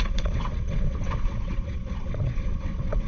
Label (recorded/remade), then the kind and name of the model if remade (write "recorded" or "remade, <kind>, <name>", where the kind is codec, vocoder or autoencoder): remade, vocoder, WaveNeXt